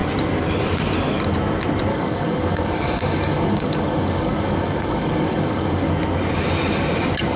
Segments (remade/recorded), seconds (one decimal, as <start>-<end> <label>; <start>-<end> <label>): 0.0-1.9 recorded; 1.9-5.9 remade; 5.9-7.4 recorded